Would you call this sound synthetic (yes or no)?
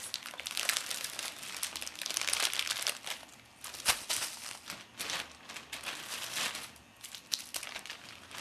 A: no